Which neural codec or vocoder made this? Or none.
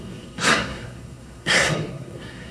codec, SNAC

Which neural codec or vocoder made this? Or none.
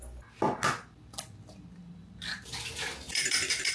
none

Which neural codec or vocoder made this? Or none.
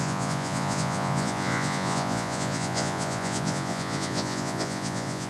vocoder, Vocos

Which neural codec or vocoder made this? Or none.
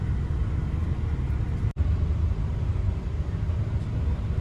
none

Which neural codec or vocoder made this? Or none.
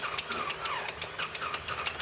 none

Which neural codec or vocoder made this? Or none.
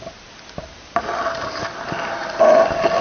none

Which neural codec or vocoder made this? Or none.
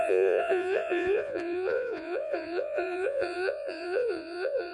vocoder, Vocos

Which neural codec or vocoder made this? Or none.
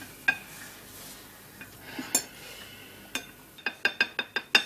none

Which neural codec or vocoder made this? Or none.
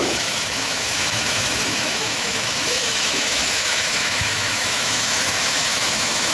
autoencoder, DAC-VAE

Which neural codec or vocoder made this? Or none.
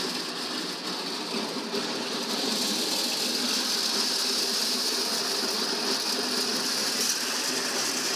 none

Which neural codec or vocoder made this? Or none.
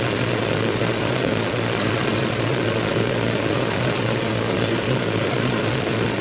vocoder, Vocos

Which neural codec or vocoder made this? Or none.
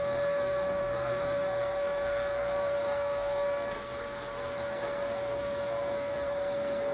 codec, SNAC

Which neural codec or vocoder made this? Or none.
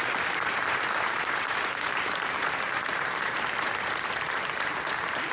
vocoder, BigVGAN v2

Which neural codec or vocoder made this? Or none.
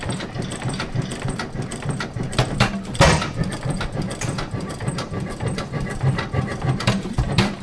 vocoder, BigVGAN v2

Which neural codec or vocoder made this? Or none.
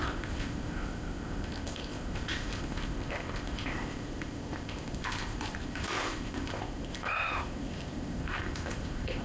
codec, ZipCodec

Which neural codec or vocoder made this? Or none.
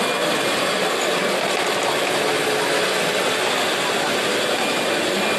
none